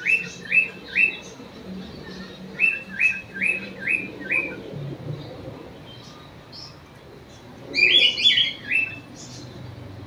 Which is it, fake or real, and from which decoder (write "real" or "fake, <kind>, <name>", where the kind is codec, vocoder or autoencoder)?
real